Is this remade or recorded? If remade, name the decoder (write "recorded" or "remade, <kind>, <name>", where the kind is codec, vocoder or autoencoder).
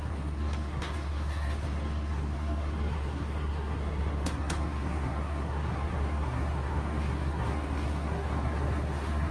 remade, codec, SNAC